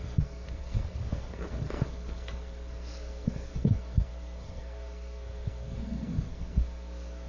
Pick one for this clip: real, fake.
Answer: fake